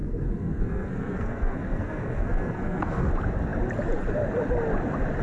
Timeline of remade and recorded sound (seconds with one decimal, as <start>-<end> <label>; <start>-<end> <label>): 0.0-3.1 remade; 3.1-5.2 recorded